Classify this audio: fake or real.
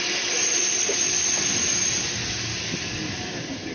real